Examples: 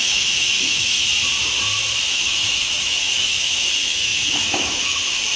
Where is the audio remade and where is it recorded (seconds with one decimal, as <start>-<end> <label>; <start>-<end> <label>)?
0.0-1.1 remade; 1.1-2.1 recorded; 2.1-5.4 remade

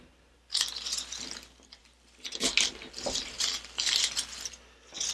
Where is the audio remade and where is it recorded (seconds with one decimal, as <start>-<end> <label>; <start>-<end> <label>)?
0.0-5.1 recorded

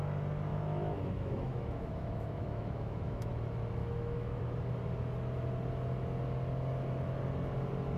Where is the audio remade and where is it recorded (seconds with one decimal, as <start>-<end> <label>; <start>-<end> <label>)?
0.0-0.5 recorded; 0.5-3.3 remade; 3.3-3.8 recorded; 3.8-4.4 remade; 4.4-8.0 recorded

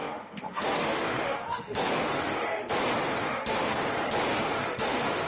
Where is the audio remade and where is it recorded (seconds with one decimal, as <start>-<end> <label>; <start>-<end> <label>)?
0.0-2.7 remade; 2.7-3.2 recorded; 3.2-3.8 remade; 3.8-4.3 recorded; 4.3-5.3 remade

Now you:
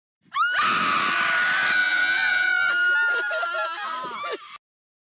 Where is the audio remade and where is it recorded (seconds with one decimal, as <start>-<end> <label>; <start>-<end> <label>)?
0.0-5.2 recorded